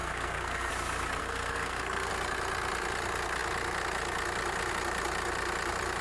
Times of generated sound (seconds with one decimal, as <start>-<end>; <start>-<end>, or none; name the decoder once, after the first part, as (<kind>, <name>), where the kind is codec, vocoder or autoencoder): 0.0-0.7 (codec, SNAC); 1.2-2.1